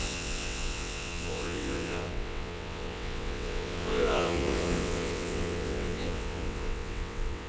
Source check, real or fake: fake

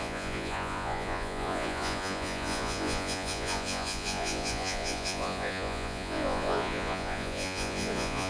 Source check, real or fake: fake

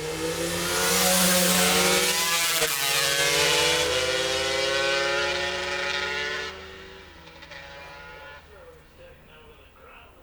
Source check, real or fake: real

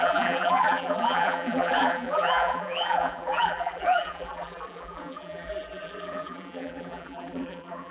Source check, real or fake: fake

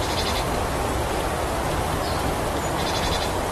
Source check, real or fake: fake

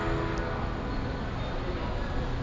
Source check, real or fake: real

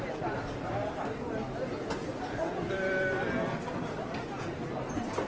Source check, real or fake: real